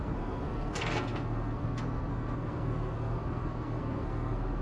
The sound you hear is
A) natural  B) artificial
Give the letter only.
B